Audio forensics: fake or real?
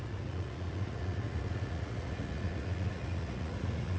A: fake